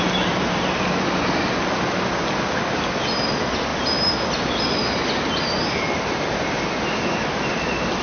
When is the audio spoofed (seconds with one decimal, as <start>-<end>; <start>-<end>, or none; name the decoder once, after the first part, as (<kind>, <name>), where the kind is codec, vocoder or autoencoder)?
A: none